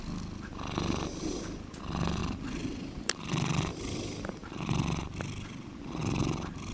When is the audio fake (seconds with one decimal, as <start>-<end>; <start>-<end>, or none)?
2.2-3.7; 4.4-5.2; 6.0-6.7